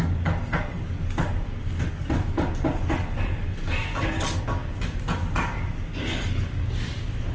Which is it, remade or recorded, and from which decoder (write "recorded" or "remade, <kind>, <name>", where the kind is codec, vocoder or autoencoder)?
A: remade, codec, DAC